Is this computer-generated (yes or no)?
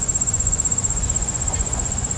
yes